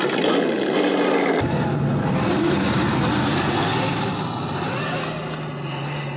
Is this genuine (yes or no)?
yes